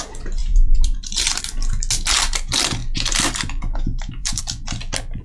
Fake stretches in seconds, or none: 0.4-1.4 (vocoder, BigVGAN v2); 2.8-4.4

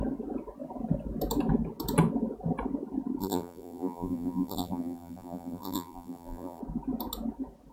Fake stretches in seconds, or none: 3.2-6.6 (vocoder, BigVGAN v2)